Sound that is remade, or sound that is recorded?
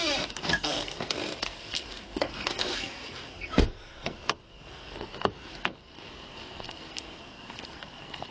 remade